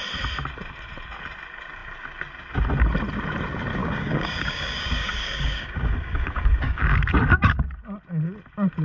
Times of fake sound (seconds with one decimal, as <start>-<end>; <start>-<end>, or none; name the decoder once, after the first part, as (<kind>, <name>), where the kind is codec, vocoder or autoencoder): 3.8-6.8 (codec, DAC)